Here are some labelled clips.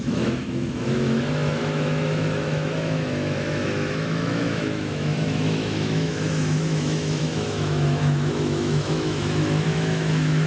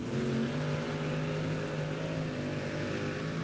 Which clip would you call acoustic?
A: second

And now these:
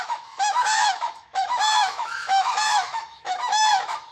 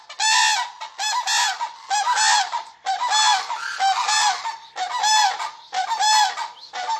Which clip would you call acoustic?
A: second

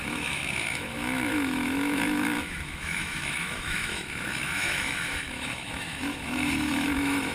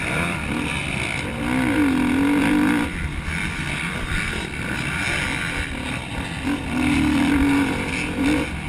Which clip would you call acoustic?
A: second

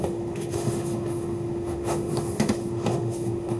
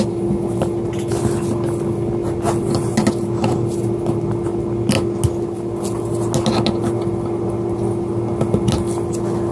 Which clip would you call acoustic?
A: second